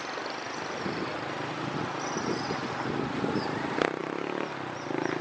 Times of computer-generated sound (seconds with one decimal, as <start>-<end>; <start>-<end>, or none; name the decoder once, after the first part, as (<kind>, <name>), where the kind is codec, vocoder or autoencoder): none